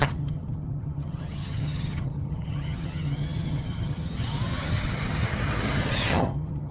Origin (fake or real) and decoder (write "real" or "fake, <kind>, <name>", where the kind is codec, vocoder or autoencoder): fake, vocoder, HiFi-GAN